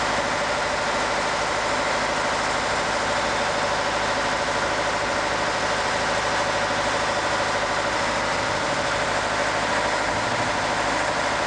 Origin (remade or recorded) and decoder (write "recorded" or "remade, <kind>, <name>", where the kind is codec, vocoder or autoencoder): recorded